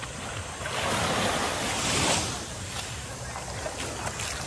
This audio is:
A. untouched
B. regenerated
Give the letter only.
A